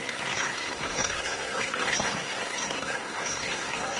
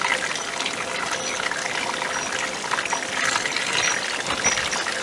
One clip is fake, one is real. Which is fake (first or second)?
first